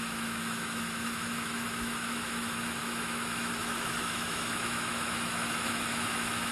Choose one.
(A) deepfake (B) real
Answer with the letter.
A